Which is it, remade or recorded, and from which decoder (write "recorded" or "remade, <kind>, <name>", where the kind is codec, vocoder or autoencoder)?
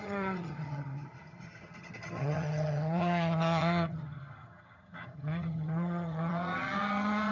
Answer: remade, vocoder, HiFi-GAN